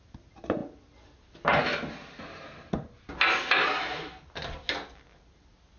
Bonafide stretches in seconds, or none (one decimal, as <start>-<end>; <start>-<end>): 0.0-5.8